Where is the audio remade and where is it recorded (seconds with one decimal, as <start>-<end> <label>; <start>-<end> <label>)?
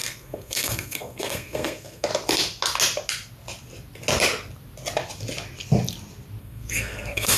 0.0-2.1 remade; 2.1-6.4 recorded; 6.4-7.4 remade